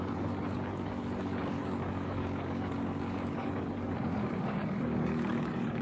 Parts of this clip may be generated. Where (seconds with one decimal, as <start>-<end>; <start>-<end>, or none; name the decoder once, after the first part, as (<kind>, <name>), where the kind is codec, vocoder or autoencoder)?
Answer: 0.0-5.8 (codec, DAC)